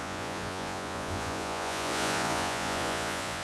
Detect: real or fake fake